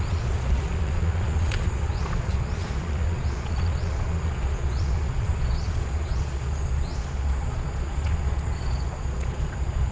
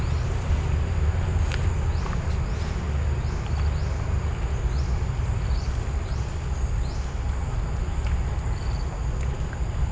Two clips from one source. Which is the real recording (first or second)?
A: second